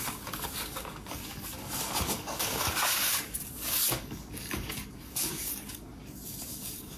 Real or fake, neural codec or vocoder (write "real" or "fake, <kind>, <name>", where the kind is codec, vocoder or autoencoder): fake, codec, DAC